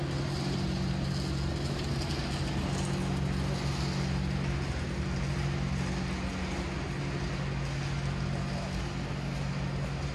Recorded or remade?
recorded